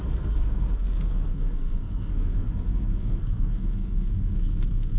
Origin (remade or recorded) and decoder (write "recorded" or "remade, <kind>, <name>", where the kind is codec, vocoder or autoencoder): remade, codec, SNAC